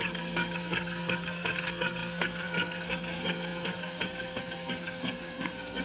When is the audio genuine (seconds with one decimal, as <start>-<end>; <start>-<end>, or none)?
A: none

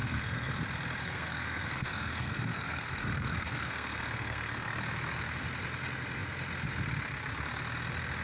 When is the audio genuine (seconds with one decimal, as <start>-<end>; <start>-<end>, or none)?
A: 0.5-1.0; 4.8-8.2

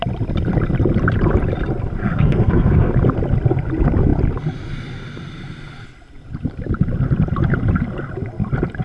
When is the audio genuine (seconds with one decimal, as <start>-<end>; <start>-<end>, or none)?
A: 0.0-2.0; 2.9-8.8

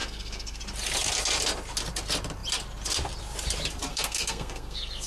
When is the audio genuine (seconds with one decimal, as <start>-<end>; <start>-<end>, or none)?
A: 0.6-3.9

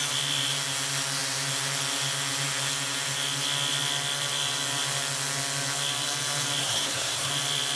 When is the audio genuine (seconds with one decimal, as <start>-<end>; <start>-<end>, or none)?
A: 0.0-6.6; 7.3-7.8

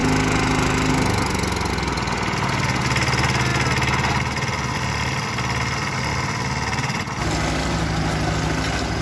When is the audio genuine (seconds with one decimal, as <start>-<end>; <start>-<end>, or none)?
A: 0.0-9.0

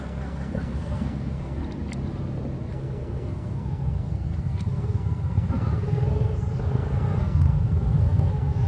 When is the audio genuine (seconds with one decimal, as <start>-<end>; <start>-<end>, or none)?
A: 1.6-2.7

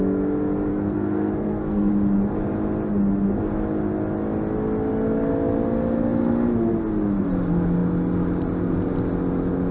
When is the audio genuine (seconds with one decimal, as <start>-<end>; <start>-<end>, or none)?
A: 0.0-0.7; 1.9-9.7